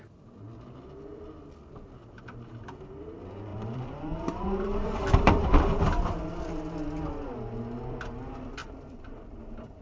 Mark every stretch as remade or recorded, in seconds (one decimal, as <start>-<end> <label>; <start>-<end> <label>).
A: 0.0-3.5 recorded; 3.5-5.8 remade; 5.8-8.6 recorded; 8.6-9.2 remade; 9.2-9.8 recorded